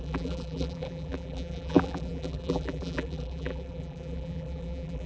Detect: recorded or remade remade